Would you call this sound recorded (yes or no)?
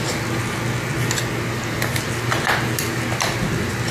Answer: yes